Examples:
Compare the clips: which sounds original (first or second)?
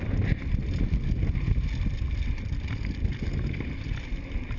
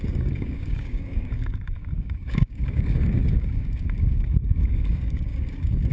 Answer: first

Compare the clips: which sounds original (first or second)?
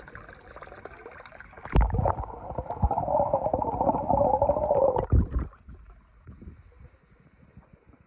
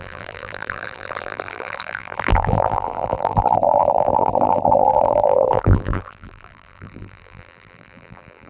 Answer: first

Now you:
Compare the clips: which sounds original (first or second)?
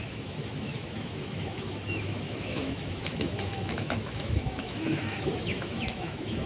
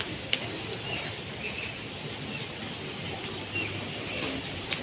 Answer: second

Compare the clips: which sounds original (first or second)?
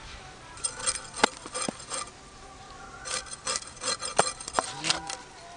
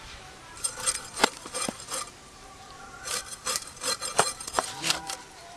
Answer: first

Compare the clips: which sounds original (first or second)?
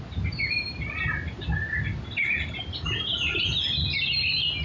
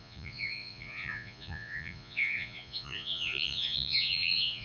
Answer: first